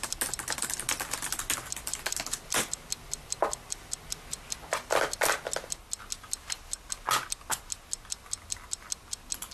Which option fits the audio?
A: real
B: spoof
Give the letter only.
A